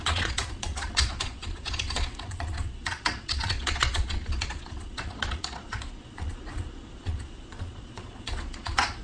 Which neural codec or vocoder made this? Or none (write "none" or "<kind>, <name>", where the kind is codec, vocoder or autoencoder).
vocoder, Vocos